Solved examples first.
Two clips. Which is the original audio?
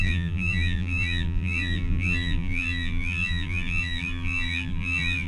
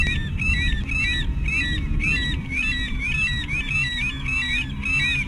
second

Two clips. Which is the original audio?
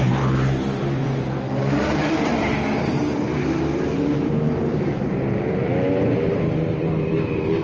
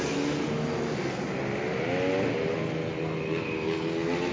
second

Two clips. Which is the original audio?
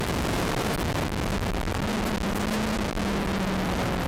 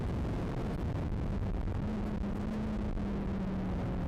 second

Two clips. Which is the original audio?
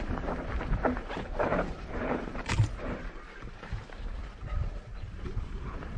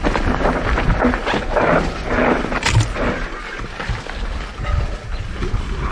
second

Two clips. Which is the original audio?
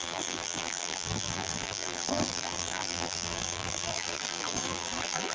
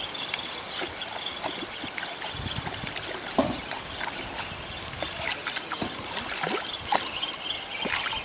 second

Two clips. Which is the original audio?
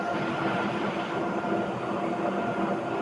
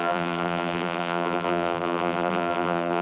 first